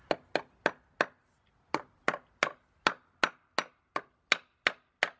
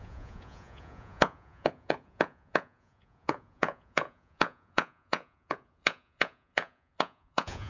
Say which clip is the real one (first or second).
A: first